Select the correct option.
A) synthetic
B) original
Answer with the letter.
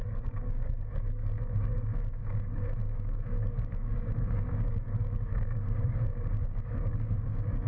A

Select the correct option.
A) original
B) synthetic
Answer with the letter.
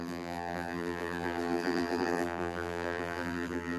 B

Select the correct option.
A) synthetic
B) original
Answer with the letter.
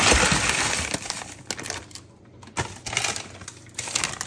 B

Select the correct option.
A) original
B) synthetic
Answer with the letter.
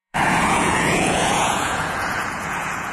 B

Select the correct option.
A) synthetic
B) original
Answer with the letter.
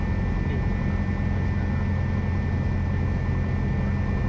B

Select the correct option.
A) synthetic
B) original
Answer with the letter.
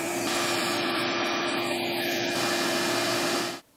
B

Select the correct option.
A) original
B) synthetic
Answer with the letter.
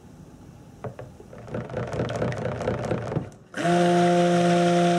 A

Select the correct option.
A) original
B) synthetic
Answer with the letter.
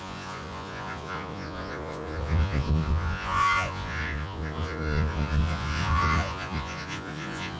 B